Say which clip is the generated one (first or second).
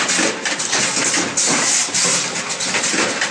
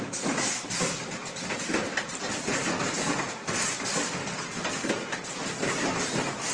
second